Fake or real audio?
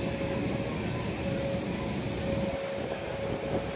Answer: real